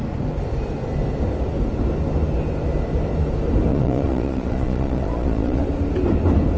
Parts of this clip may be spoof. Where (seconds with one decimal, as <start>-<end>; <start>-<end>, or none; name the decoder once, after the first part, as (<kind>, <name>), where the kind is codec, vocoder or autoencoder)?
3.7-5.6 (vocoder, Vocos)